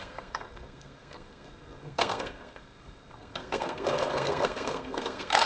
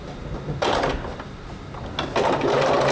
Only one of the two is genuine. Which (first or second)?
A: second